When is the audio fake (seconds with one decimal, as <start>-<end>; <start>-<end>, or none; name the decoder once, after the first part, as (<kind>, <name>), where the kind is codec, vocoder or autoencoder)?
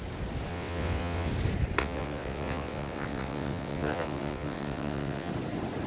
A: 0.5-1.3 (vocoder, WaveNeXt); 1.8-5.3